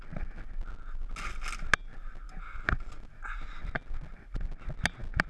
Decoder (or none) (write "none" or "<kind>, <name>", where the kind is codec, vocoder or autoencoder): none